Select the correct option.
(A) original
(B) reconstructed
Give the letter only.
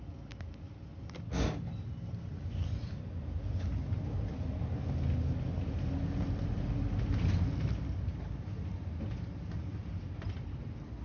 A